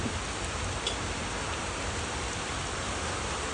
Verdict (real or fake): real